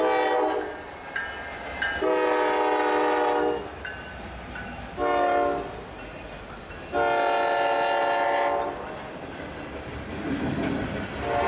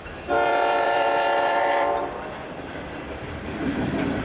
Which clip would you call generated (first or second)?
second